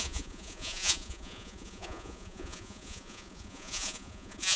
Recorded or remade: remade